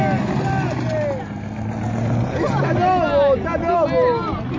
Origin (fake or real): real